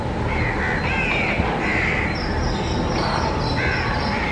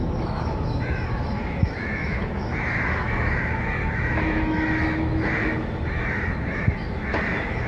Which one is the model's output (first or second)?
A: second